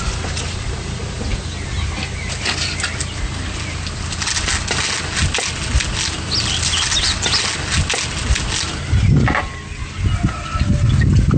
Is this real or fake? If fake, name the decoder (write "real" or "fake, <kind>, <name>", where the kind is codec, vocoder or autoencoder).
real